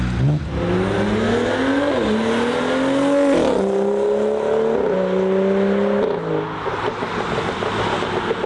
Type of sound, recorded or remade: recorded